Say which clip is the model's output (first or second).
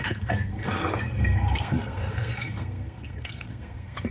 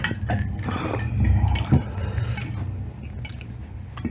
first